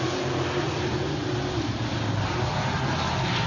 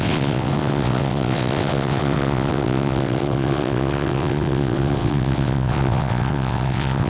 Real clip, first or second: first